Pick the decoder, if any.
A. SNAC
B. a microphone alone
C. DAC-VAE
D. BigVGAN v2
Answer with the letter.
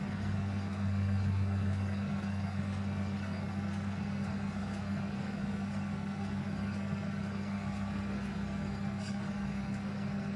A